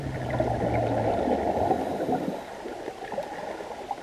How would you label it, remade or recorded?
recorded